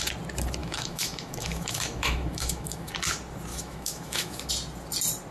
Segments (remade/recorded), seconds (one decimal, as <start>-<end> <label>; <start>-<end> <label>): 0.0-0.6 recorded; 0.6-2.9 remade; 2.9-3.5 recorded; 3.5-4.5 remade; 4.5-5.3 recorded